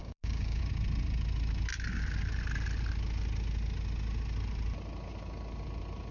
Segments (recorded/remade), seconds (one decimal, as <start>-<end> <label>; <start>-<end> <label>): 0.0-0.6 remade; 0.6-6.1 recorded